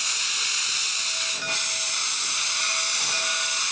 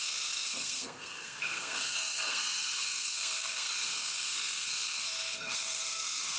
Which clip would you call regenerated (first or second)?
second